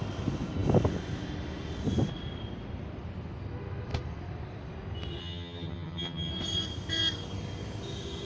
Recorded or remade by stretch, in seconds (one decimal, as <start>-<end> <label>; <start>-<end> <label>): 0.0-5.2 recorded; 5.2-6.3 remade; 6.3-8.3 recorded